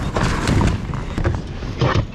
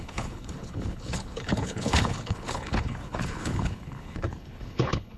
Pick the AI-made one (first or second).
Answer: second